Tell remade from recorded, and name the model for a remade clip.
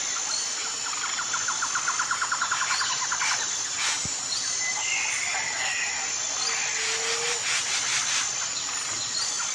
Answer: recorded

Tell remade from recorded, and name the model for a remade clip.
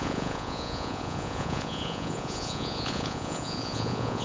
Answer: remade, vocoder, Vocos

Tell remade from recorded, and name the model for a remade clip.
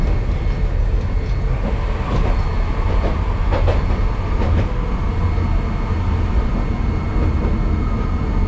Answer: recorded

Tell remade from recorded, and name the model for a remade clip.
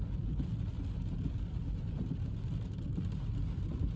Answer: recorded